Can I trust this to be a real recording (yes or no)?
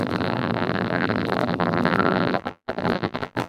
no